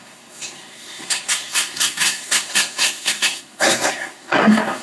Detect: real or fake fake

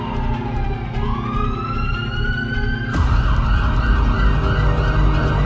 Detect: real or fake real